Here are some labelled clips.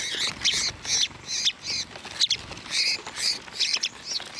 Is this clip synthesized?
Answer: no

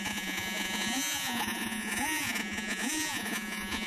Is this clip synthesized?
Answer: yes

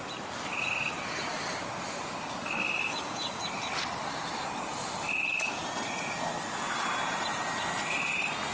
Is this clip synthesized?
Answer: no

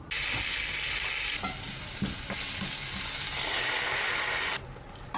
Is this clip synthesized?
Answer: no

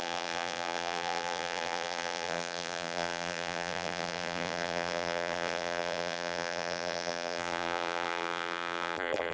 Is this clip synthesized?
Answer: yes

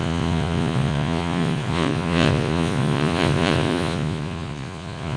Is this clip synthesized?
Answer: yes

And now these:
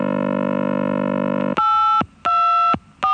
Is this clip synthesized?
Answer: no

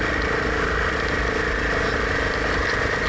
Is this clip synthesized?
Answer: no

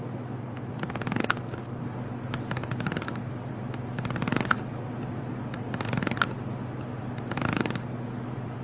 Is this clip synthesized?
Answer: no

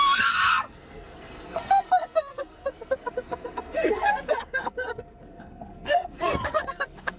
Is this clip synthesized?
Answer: yes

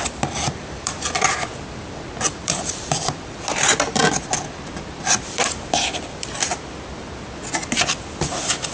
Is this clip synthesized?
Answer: yes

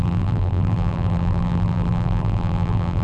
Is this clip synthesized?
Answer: yes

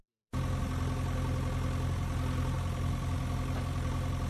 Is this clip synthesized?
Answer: no